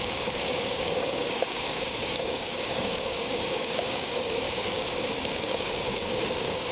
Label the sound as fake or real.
fake